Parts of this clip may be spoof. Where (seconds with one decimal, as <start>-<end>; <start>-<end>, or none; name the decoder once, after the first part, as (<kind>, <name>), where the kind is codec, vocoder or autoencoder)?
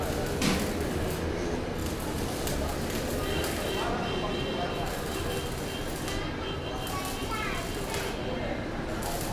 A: 1.8-5.3 (vocoder, BigVGAN v2); 7.2-7.8